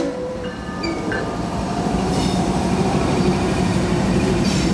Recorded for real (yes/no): no